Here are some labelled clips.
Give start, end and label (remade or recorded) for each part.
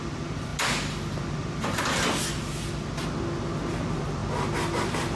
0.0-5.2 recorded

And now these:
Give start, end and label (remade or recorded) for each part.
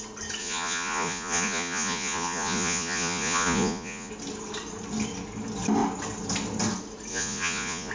0.0-0.4 recorded; 0.4-4.1 remade; 4.1-7.1 recorded; 7.1-7.9 remade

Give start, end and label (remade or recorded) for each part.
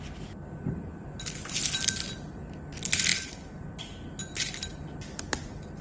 0.0-5.8 recorded